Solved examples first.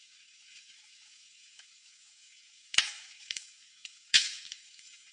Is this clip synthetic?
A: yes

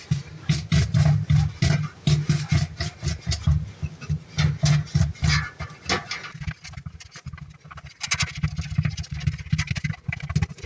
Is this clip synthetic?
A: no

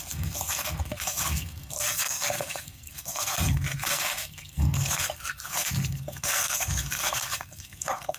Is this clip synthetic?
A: yes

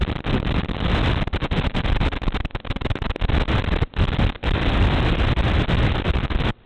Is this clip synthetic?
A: no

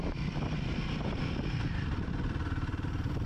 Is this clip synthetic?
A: no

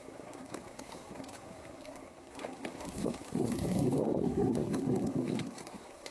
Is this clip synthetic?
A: yes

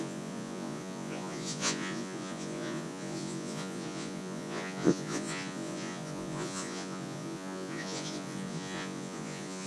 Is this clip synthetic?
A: yes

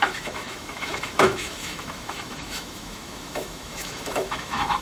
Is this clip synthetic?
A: yes